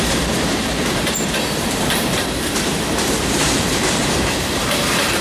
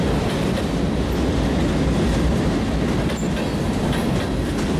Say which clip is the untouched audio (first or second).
second